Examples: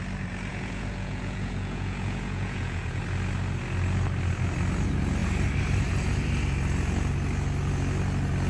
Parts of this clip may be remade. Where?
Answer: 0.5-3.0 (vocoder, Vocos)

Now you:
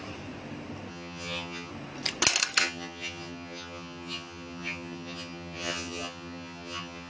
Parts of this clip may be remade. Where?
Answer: 0.9-1.7 (vocoder, HiFi-GAN); 2.6-7.1

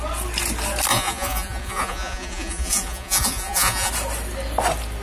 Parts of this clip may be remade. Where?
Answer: 0.9-3.9 (vocoder, Vocos)

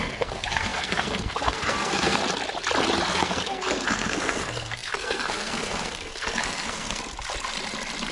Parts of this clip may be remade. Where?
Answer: 0.0-2.2 (codec, SNAC); 3.1-7.0

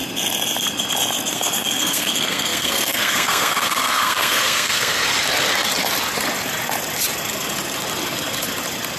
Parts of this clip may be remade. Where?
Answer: 1.3-5.0 (codec, SNAC)